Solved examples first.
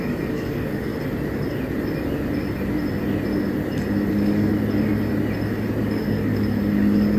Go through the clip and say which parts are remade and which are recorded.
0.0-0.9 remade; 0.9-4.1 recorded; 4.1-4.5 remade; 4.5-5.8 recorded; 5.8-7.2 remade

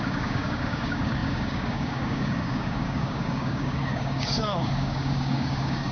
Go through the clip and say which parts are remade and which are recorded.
0.0-5.9 remade

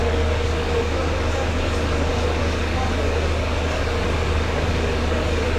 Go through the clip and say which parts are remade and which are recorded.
0.0-5.6 remade